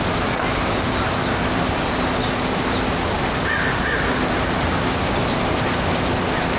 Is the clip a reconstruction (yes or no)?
no